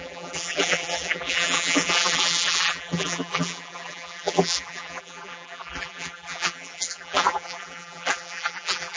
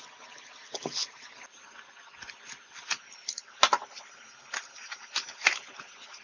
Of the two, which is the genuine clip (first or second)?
second